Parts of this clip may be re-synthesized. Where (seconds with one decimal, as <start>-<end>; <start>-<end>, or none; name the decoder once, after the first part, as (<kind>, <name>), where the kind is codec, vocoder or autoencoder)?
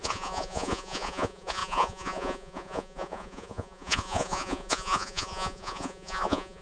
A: 0.0-6.6 (vocoder, Vocos)